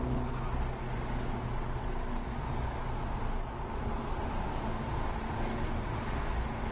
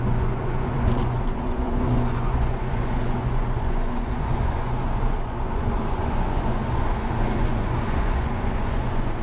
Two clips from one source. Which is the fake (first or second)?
second